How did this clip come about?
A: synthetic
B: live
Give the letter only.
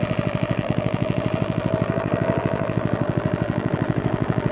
A